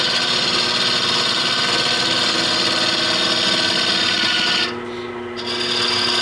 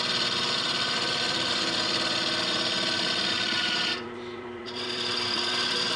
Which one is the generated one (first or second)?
second